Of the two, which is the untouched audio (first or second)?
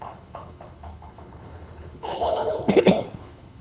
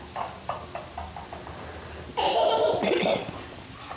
second